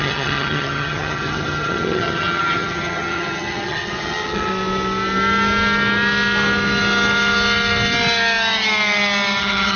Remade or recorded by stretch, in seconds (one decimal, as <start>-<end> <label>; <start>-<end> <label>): 0.0-4.5 remade; 4.5-9.4 recorded; 9.4-9.8 remade